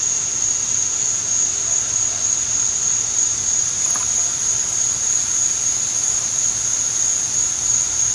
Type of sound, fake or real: real